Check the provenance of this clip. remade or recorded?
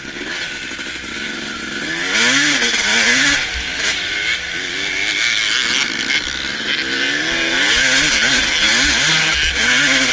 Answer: recorded